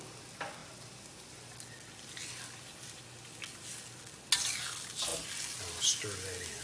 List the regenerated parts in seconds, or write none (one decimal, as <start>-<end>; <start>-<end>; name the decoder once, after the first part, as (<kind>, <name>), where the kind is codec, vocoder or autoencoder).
none